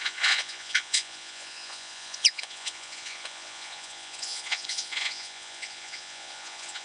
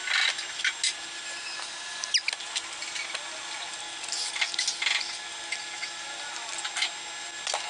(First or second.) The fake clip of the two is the first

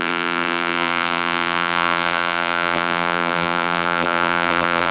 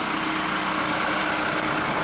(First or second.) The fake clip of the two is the first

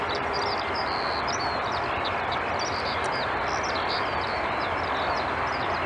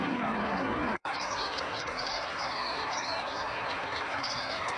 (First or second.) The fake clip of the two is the second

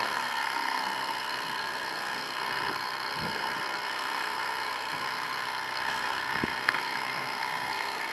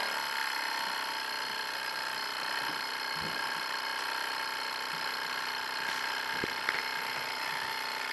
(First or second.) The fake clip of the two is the first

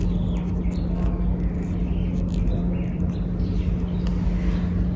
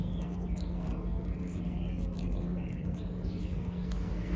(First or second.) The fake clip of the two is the second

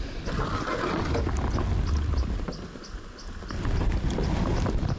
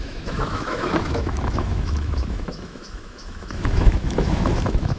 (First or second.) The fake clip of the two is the second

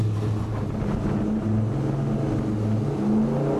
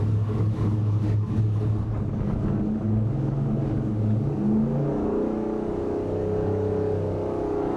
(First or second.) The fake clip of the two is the second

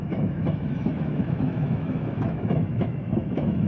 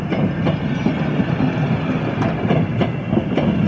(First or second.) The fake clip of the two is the first